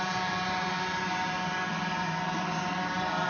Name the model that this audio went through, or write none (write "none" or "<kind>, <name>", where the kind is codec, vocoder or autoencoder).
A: vocoder, BigVGAN v2